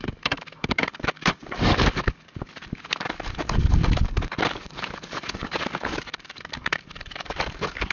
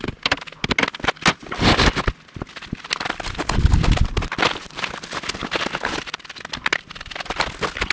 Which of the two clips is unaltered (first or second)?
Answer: second